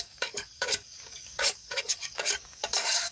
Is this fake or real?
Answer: fake